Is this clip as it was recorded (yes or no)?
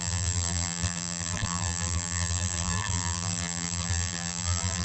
no